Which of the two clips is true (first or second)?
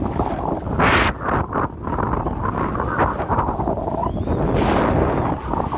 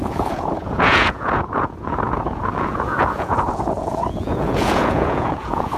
first